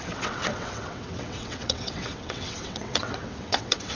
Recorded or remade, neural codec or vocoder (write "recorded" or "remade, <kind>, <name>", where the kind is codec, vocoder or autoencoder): remade, vocoder, WaveNeXt